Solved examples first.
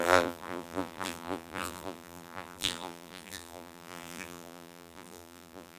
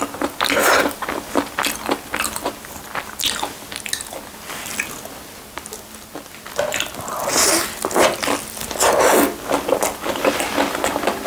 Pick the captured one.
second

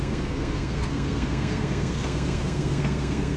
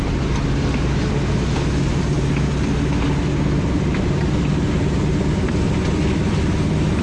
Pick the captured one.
second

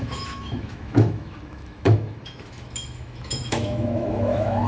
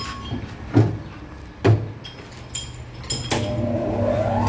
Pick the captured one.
second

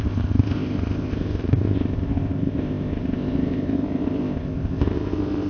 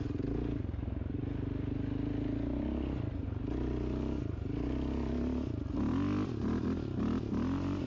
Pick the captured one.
second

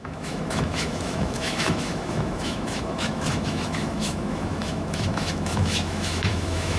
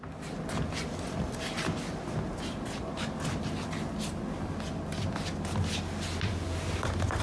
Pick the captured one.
second